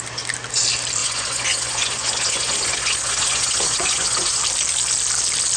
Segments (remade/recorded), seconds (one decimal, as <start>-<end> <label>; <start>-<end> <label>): 0.0-1.0 recorded; 1.0-4.4 remade; 4.4-5.6 recorded

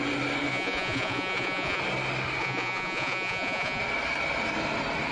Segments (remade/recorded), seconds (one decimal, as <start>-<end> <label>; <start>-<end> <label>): 0.0-0.5 recorded; 0.5-1.8 remade; 1.8-2.4 recorded; 2.4-3.8 remade; 3.8-5.1 recorded

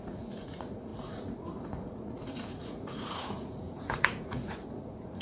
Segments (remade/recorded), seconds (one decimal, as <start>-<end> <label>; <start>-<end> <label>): 0.0-5.2 remade

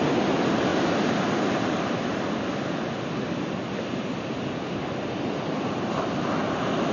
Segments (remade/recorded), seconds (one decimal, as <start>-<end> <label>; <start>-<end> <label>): 0.0-6.9 recorded

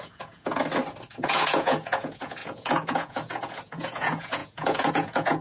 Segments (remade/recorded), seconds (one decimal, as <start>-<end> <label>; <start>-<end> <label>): 0.0-0.6 remade; 0.6-1.1 recorded; 1.1-5.4 remade

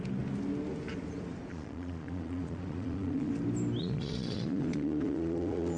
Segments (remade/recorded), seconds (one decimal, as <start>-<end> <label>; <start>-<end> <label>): 0.0-1.5 recorded; 1.5-3.3 remade; 3.3-3.8 recorded; 3.8-5.8 remade

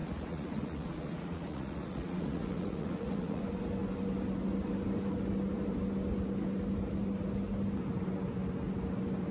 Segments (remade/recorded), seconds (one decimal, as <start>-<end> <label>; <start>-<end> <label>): 0.0-3.4 remade; 3.4-9.3 recorded